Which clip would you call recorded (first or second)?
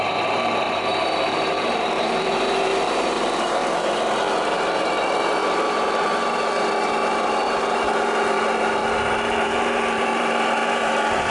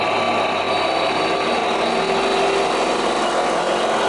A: second